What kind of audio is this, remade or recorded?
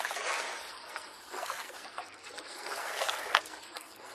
remade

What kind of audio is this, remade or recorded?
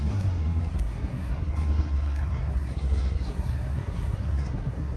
remade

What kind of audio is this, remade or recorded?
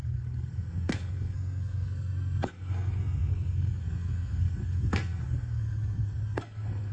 remade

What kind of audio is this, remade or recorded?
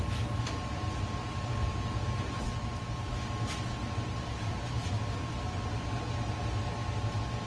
recorded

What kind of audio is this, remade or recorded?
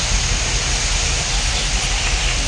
recorded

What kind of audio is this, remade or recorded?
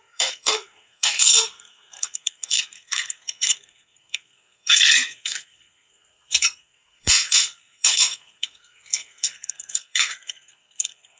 remade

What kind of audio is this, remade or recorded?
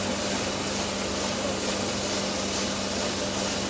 recorded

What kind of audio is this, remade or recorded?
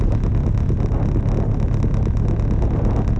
recorded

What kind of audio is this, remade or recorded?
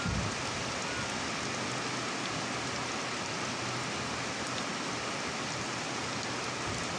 recorded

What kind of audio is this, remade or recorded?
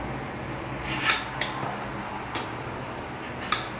recorded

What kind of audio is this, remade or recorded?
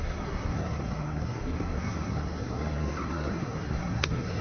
remade